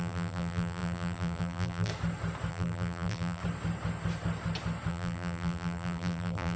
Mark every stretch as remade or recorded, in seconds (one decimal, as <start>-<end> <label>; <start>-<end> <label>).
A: 0.0-1.9 remade; 1.9-2.5 recorded; 2.5-3.4 remade; 3.4-4.9 recorded; 4.9-6.6 remade